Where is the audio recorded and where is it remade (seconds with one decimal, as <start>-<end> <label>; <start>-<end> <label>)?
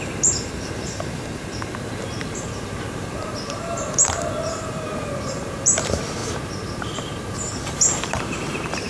0.0-8.9 remade